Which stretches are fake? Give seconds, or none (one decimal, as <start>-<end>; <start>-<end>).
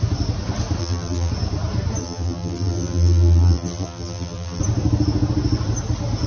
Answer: 0.8-1.3; 2.0-4.6